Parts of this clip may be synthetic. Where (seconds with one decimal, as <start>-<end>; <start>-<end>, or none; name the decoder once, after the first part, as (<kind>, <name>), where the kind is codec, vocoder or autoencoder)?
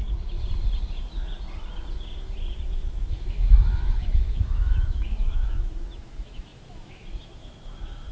2.7-8.1 (autoencoder, DAC-VAE)